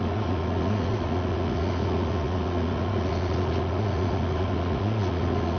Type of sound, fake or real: fake